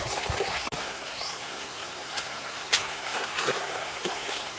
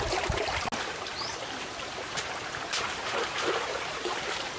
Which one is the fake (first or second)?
first